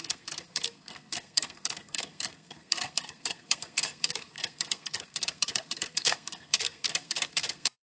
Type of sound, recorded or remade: remade